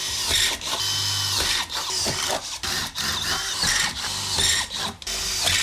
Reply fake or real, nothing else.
real